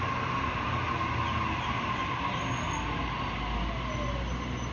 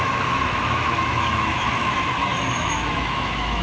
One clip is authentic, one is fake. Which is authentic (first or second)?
first